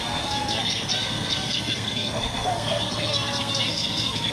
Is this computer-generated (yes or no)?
yes